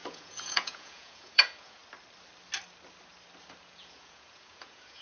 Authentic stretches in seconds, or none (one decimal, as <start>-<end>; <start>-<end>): 1.8-3.6